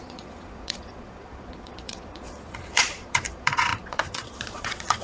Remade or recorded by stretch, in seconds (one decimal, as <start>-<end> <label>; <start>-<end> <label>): 0.0-5.0 remade